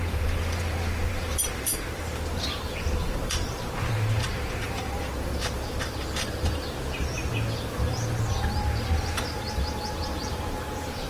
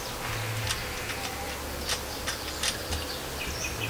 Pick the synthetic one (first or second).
first